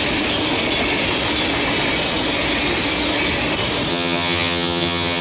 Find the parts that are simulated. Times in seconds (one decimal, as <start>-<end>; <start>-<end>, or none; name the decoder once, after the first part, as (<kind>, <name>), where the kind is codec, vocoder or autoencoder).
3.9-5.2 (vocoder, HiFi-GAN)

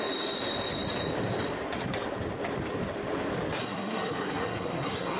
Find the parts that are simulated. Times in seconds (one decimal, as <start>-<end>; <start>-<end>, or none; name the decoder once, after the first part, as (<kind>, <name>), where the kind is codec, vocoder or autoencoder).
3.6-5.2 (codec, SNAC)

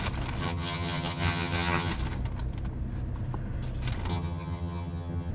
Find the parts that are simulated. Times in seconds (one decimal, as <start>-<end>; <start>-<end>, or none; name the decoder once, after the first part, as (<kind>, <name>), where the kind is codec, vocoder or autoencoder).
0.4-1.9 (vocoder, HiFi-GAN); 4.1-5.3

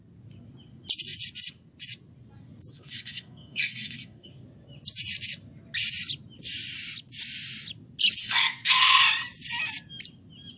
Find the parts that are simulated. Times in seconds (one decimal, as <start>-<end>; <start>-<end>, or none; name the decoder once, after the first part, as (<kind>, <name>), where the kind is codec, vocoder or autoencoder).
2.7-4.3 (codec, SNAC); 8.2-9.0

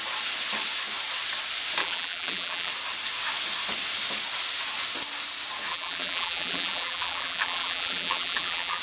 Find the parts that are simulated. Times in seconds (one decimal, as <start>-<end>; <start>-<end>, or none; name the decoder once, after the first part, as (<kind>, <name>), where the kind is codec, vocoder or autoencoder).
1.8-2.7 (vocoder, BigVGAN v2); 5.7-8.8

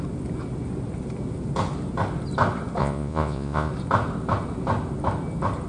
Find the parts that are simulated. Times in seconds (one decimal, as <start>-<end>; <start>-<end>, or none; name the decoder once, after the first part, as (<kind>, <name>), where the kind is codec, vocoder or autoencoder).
2.8-3.7 (vocoder, Vocos)

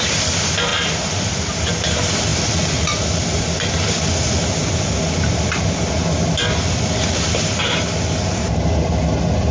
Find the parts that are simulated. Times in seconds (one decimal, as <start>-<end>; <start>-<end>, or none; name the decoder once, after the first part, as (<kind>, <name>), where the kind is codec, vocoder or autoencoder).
0.7-1.7 (vocoder, BigVGAN v2); 2.3-3.4

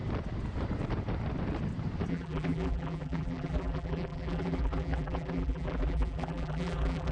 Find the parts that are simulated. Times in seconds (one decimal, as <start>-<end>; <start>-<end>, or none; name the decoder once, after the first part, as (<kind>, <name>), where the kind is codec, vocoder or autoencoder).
2.1-7.1 (vocoder, BigVGAN v2)